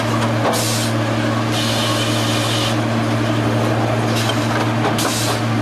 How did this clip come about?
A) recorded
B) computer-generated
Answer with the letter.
A